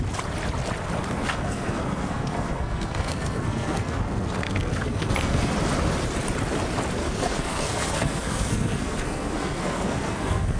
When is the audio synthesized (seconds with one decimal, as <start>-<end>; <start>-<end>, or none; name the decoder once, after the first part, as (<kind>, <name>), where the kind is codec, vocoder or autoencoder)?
1.2-5.5 (codec, SNAC); 7.0-10.6

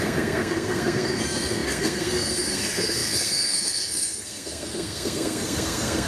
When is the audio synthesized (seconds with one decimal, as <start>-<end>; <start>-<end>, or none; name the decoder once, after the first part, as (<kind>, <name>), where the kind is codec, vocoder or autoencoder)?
0.0-6.1 (codec, SNAC)

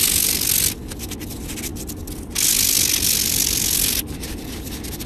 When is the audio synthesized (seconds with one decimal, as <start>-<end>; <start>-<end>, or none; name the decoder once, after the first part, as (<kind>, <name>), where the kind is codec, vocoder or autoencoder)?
none

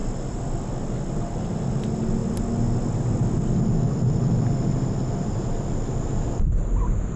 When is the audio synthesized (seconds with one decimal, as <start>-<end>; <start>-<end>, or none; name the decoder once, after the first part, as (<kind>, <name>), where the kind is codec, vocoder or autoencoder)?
none

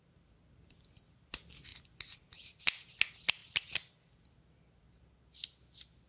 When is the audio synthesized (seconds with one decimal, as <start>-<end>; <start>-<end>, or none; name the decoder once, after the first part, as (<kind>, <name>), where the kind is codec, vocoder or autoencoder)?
none

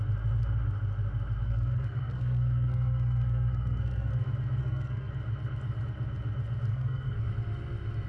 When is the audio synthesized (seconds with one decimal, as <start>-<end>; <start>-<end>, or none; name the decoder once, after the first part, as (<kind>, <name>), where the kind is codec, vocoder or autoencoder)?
1.4-4.1 (codec, SNAC); 4.6-5.1; 6.7-7.3

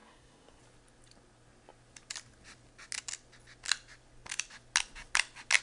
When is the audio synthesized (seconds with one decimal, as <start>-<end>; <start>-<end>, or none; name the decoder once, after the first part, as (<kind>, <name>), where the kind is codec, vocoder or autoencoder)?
0.0-0.6 (codec, SNAC)

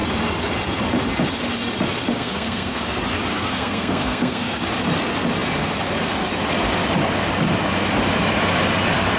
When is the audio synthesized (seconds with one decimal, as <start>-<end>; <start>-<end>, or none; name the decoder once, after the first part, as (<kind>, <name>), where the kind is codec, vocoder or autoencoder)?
2.1-2.8 (codec, SNAC); 3.3-4.6